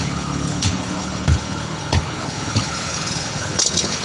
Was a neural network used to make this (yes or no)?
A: yes